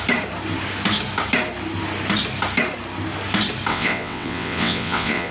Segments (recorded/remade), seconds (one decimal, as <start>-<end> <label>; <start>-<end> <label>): 0.0-3.7 recorded; 3.7-5.3 remade